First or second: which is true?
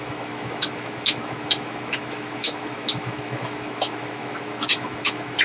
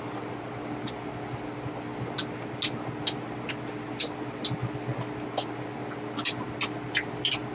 second